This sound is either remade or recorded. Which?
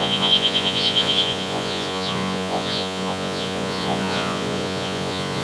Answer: remade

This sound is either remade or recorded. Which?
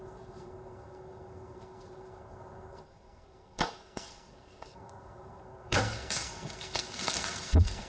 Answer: remade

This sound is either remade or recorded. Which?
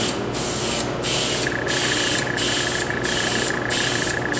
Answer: recorded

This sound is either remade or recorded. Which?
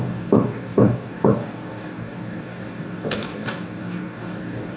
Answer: remade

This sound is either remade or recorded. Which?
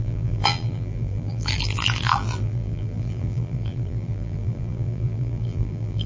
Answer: remade